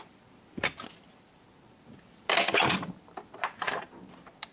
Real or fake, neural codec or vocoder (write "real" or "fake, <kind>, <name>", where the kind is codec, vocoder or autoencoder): real